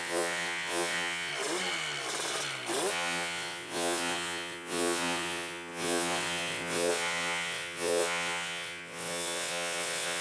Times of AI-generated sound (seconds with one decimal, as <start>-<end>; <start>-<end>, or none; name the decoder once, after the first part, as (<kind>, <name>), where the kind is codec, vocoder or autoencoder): 0.0-1.3 (vocoder, WaveNeXt); 2.9-10.2